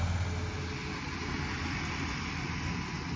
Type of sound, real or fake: real